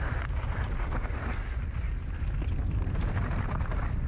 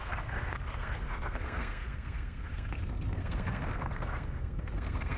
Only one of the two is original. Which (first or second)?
first